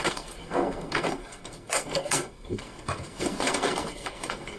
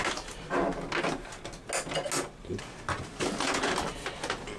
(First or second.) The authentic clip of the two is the second